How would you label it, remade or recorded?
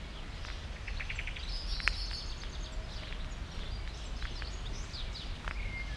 recorded